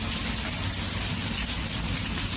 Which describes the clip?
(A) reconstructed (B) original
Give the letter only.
B